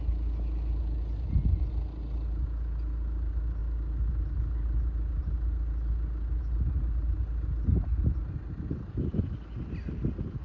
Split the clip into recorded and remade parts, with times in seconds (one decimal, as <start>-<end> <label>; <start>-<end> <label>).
0.0-10.4 recorded